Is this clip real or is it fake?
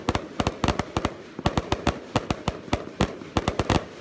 real